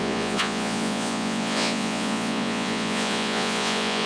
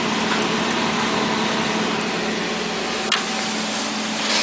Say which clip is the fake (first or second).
first